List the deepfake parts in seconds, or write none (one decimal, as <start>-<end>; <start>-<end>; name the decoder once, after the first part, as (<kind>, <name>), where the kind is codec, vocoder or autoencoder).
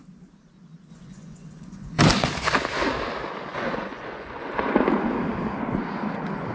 0.9-2.0 (vocoder, Vocos); 3.5-4.7